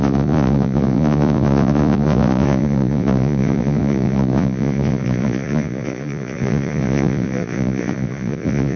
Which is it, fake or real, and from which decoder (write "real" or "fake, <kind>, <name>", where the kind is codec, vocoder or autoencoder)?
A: fake, vocoder, Vocos